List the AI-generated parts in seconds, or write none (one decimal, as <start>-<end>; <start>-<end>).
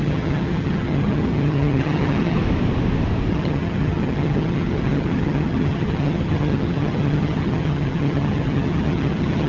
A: 0.0-2.4; 3.3-9.5